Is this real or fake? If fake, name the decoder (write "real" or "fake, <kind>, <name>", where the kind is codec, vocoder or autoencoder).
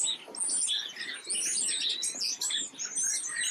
real